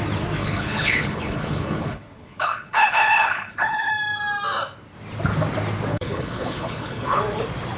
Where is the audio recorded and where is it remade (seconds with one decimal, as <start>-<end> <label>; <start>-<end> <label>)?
0.0-0.4 recorded; 0.4-3.9 remade; 3.9-5.9 recorded; 5.9-7.2 remade; 7.2-7.8 recorded